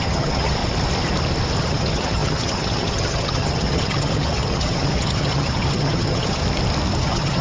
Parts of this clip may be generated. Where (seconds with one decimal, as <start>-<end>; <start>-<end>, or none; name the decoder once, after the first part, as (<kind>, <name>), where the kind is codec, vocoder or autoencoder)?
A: 0.0-0.6 (vocoder, HiFi-GAN); 1.6-6.4; 7.0-7.4

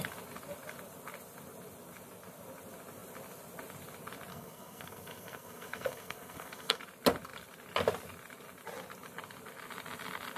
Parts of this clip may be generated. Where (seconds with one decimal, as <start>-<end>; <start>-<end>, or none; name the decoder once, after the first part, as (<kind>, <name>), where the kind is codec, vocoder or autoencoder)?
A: 4.3-6.8 (codec, SNAC)

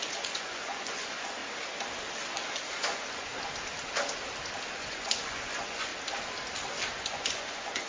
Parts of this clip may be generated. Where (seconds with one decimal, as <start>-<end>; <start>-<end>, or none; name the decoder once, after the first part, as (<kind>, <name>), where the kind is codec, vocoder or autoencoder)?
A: 0.0-1.4 (vocoder, Vocos); 2.7-3.3; 4.7-5.9; 6.9-7.9

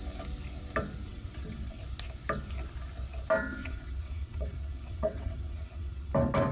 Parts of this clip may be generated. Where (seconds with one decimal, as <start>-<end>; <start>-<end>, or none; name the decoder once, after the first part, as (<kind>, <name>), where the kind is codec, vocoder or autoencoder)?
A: 1.1-1.8 (vocoder, WaveNeXt); 3.6-6.1

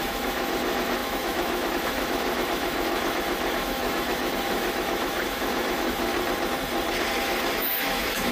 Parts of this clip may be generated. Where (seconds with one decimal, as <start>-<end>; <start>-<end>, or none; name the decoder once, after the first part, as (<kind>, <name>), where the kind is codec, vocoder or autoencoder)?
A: 0.0-6.1 (autoencoder, DAC-VAE); 7.2-8.3